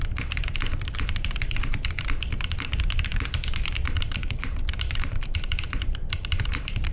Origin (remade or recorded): remade